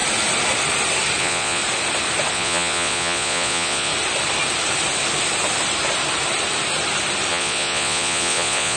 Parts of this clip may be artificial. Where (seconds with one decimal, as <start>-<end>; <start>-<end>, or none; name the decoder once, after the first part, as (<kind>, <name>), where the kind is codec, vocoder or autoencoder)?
1.2-1.6 (vocoder, Vocos); 2.3-3.9; 7.3-8.8